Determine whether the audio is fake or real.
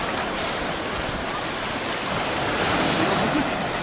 real